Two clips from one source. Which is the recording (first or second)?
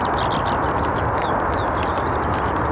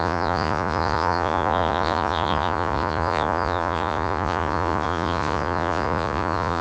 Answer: first